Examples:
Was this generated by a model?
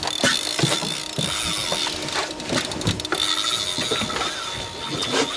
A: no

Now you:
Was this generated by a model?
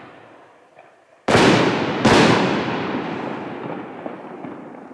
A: no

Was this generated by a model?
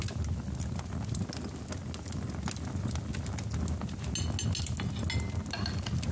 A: no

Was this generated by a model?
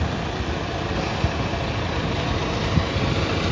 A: no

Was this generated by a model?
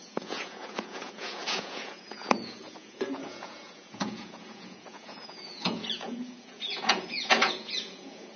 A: yes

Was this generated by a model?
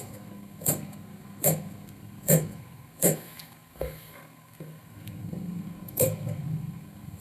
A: yes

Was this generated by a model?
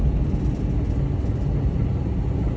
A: no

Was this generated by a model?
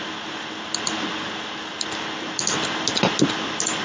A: no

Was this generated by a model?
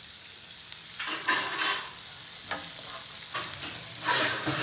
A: no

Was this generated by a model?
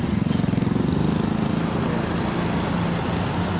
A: no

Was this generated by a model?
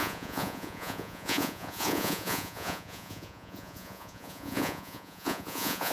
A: yes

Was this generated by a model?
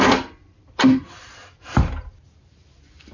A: yes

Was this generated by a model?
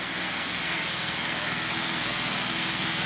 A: yes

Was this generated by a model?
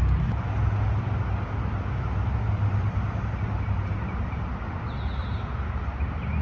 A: no